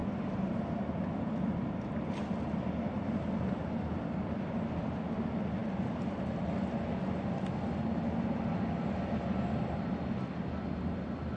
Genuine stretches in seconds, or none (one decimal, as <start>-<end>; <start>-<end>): 0.0-11.4